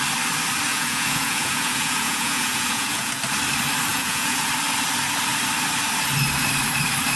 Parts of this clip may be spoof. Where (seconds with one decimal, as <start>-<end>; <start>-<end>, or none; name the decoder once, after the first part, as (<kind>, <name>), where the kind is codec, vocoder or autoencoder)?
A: 0.7-3.2 (vocoder, Vocos); 3.9-4.5